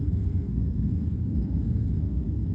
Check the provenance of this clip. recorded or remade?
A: remade